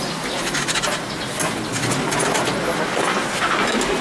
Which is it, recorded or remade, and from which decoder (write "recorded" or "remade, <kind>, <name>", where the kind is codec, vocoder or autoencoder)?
recorded